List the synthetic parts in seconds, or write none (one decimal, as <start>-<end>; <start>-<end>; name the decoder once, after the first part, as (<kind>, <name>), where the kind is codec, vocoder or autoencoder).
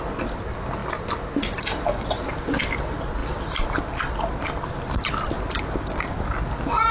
0.8-1.3 (vocoder, BigVGAN v2); 3.2-6.2